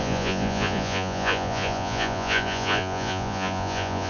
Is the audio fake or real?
fake